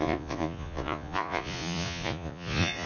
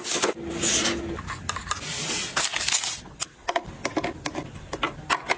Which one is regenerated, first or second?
first